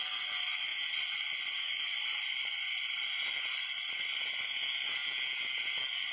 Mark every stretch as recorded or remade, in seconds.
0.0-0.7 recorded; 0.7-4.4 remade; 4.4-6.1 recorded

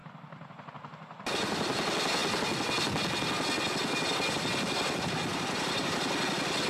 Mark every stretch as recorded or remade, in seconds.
0.0-5.3 recorded; 5.3-6.0 remade; 6.0-6.7 recorded

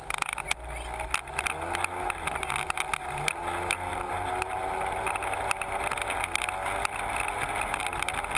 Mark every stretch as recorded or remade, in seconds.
0.0-3.9 recorded; 3.9-6.1 remade; 6.1-8.4 recorded

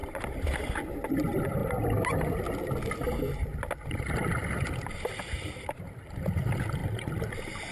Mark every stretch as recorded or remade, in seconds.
0.0-7.7 recorded